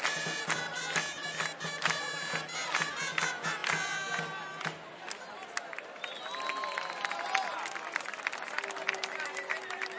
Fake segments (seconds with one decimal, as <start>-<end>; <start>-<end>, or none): none